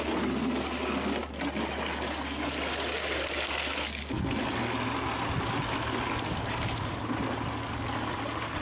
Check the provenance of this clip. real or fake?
real